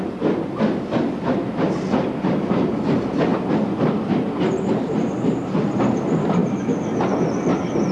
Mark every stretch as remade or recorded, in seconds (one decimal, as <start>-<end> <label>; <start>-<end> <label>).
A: 0.0-7.9 recorded